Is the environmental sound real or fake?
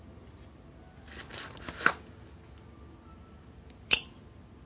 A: real